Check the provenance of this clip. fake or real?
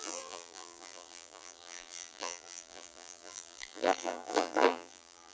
fake